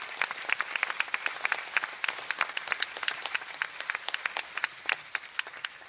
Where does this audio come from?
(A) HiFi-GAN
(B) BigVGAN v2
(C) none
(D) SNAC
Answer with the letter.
C